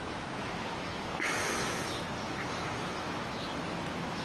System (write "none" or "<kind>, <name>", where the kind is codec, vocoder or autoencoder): autoencoder, DAC-VAE